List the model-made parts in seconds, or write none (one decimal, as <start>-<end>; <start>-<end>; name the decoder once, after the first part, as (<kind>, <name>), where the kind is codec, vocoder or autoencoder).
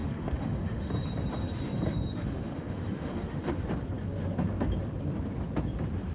0.0-0.9 (autoencoder, DAC-VAE); 2.1-3.6